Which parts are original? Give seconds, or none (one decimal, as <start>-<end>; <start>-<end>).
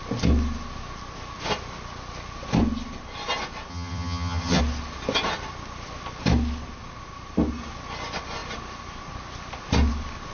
0.0-3.7; 4.6-10.3